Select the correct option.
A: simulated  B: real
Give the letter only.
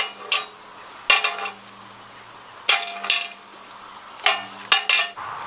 B